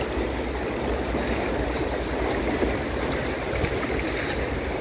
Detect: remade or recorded recorded